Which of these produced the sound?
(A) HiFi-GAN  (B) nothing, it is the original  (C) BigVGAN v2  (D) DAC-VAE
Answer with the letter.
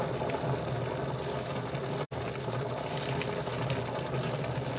B